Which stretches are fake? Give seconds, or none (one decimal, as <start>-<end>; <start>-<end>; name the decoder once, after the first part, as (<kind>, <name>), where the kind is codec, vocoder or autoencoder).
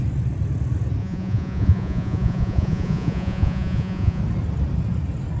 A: 1.0-4.2 (vocoder, Vocos)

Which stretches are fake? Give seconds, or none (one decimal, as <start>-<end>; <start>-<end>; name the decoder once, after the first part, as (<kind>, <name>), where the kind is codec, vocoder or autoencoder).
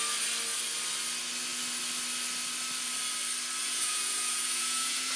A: 3.6-5.2 (vocoder, Vocos)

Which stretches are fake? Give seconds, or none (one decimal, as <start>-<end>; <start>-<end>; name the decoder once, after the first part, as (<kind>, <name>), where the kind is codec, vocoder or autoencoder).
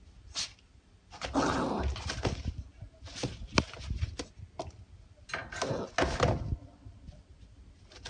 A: none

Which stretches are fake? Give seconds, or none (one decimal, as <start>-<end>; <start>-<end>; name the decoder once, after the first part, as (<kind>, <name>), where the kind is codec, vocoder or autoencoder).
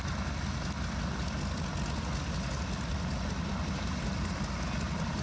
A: none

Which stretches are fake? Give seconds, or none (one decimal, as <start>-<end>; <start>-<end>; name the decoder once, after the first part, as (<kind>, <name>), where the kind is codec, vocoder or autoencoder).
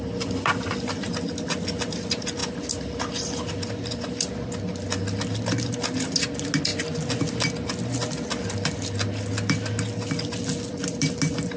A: none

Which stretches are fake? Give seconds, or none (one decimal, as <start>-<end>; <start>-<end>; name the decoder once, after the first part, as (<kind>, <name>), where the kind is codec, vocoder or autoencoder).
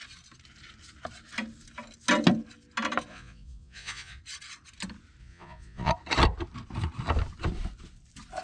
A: 3.1-4.2 (vocoder, Vocos); 5.2-5.9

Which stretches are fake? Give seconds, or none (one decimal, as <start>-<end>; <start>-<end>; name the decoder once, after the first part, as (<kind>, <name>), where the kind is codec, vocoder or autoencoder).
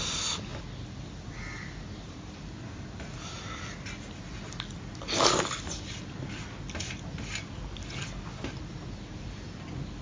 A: none